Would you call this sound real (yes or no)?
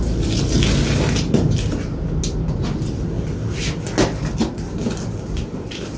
yes